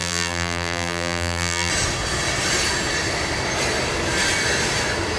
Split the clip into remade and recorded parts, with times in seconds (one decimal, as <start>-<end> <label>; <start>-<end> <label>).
0.0-1.7 remade; 1.7-5.2 recorded